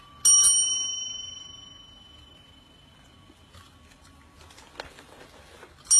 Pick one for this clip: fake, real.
real